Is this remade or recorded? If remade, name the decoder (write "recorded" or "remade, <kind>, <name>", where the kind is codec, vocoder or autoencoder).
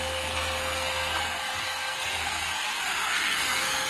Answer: remade, codec, SNAC